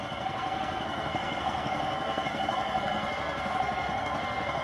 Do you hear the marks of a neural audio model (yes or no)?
yes